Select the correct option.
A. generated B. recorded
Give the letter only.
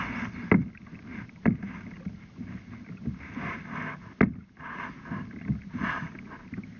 B